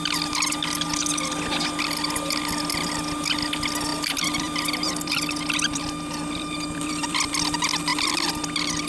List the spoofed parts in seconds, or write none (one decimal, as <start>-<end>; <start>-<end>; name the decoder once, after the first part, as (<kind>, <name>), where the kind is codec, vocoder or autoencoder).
3.9-7.3 (vocoder, BigVGAN v2); 7.9-8.9